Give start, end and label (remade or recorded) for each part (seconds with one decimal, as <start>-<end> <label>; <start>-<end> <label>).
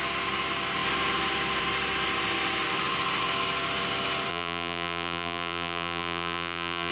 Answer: 0.0-4.3 recorded; 4.3-6.9 remade